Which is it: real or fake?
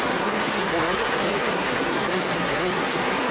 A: fake